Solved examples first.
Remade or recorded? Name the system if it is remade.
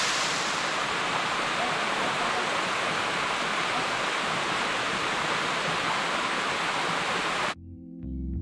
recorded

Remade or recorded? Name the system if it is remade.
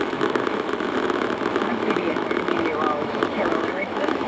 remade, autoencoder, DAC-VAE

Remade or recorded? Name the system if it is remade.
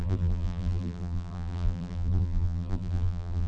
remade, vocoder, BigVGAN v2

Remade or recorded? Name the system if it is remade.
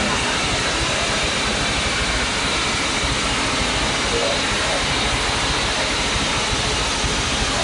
recorded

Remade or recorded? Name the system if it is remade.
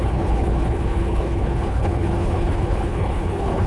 remade, codec, HILCodec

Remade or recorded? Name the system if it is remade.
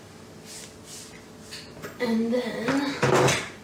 recorded